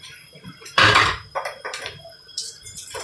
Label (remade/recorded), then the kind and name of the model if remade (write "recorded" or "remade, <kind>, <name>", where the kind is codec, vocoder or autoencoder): remade, vocoder, BigVGAN v2